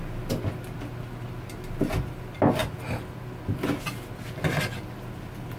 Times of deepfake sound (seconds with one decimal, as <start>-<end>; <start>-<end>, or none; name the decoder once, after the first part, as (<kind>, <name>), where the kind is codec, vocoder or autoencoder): none